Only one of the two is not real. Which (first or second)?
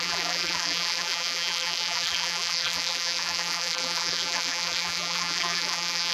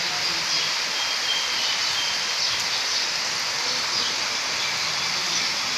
first